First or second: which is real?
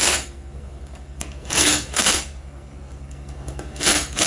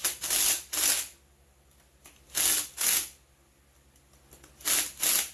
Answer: second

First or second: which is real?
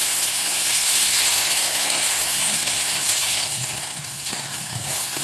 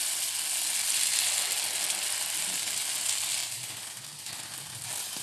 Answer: second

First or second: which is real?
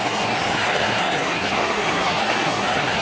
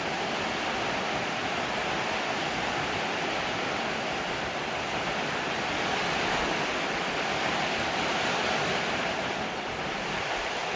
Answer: second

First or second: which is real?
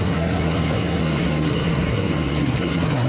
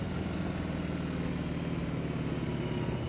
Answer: second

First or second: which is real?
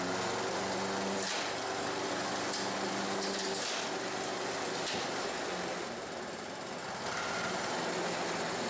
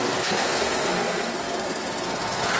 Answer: first